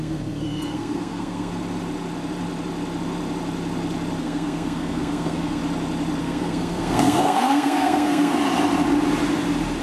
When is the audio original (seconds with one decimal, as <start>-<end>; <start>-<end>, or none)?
1.5-4.2; 5.6-6.2; 8.3-9.8